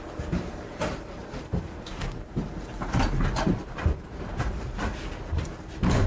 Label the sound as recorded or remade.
remade